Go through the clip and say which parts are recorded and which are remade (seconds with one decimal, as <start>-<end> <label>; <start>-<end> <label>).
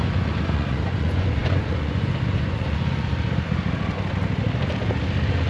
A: 0.0-3.1 remade; 3.1-5.5 recorded